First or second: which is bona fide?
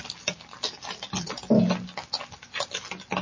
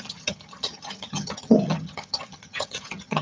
first